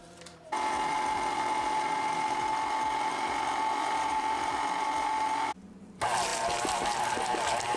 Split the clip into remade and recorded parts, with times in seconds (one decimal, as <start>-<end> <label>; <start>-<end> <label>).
0.0-7.8 recorded